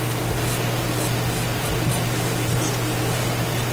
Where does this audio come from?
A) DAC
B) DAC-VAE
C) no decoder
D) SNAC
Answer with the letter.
C